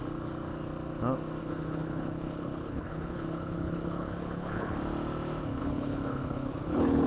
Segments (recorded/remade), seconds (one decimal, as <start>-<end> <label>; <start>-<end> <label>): 0.0-1.4 recorded; 1.4-4.8 remade; 4.8-5.6 recorded; 5.6-7.1 remade

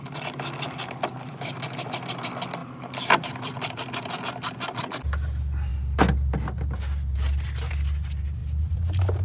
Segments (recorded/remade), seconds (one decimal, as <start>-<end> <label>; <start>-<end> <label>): 0.0-2.6 recorded; 2.6-3.2 remade; 3.2-8.4 recorded; 8.4-9.2 remade

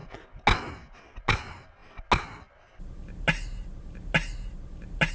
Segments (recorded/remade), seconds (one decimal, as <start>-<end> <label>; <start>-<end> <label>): 0.0-5.1 recorded

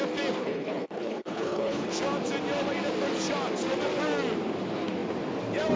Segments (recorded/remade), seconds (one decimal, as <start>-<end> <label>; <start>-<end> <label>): 0.0-0.4 recorded; 0.4-1.9 remade; 1.9-5.8 recorded